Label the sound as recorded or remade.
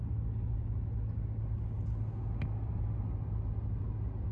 recorded